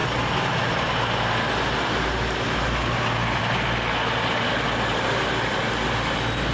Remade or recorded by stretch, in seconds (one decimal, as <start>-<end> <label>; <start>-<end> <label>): 0.0-6.5 recorded